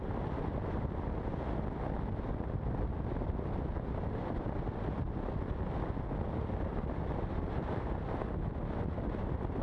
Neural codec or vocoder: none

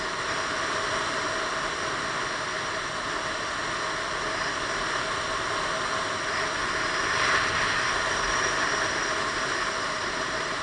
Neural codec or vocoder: none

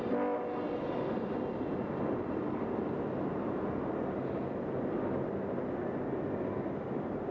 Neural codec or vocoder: none